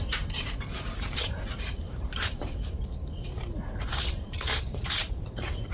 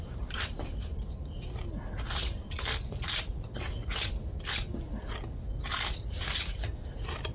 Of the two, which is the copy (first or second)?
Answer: first